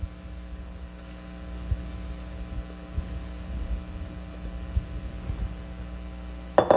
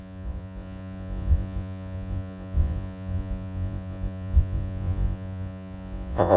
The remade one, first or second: second